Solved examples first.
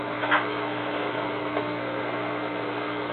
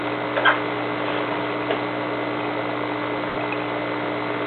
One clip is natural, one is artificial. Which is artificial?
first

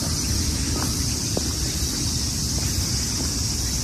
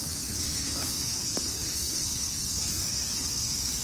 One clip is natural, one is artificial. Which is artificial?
second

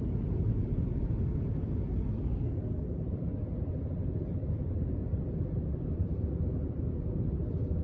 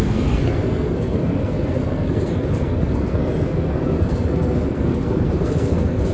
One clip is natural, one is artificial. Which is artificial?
second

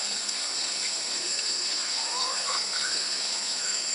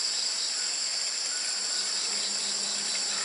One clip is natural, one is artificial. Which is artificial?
first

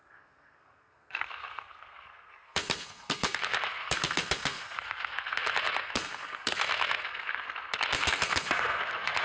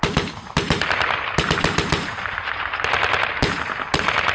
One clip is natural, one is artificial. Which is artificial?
first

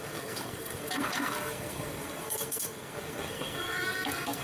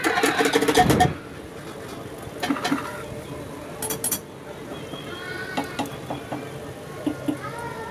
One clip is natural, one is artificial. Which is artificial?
first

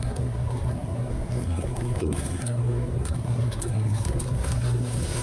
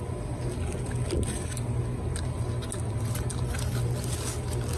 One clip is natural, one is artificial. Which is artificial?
first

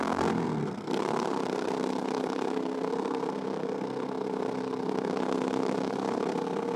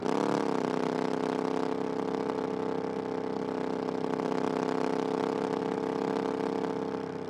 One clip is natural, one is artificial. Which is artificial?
first